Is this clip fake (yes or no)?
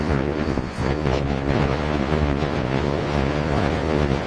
yes